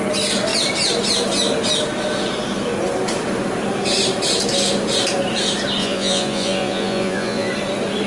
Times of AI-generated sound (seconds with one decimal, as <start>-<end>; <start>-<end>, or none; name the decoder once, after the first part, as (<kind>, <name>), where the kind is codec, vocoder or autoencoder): 5.8-7.5 (vocoder, Vocos)